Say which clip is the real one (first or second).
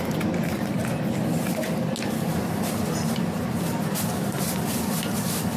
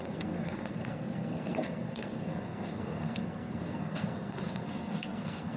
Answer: first